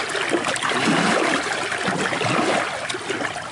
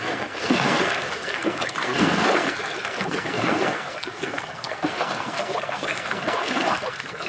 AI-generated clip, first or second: second